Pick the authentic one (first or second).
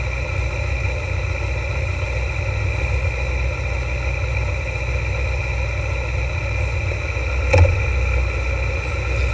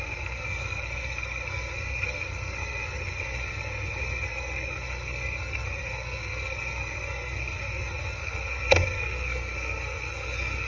first